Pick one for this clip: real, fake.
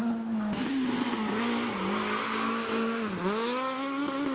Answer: real